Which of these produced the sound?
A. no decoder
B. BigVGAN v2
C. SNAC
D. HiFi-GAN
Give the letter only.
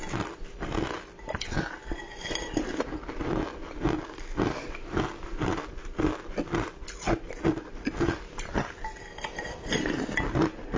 A